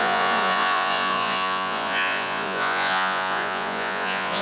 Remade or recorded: remade